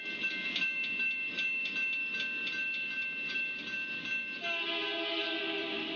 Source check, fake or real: real